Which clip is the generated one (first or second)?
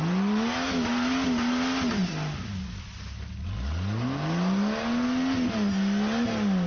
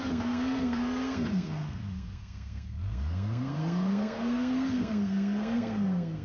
second